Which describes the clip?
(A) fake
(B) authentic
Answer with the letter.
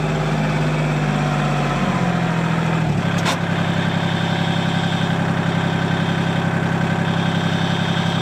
B